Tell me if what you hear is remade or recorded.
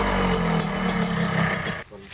recorded